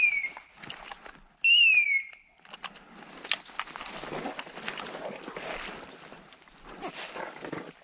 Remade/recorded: recorded